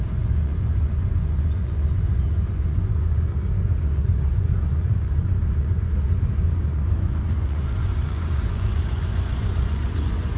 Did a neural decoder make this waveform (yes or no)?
yes